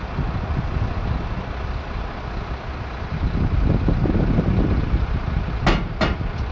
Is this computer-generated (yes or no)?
no